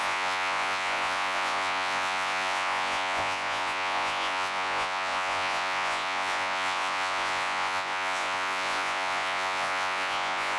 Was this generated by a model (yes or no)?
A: yes